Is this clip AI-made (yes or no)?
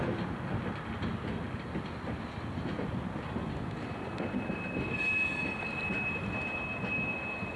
no